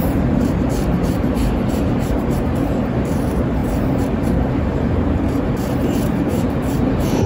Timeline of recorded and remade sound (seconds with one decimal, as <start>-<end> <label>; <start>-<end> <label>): 0.0-7.3 remade